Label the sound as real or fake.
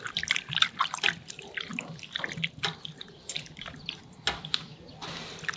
real